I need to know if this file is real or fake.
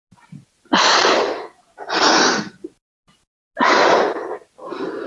real